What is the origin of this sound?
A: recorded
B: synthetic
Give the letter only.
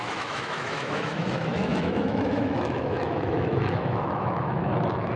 B